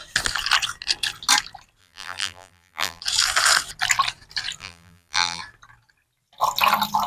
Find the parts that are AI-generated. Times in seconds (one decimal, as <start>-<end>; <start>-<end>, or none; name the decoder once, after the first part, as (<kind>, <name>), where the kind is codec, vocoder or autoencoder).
1.8-3.0 (vocoder, BigVGAN v2); 4.6-5.4